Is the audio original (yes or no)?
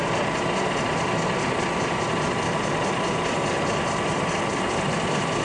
yes